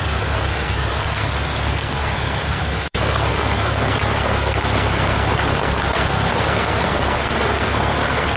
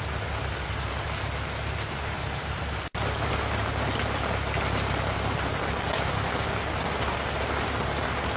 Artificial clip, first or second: first